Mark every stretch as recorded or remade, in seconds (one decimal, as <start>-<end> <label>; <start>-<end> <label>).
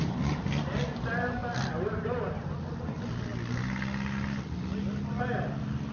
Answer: 0.0-5.9 recorded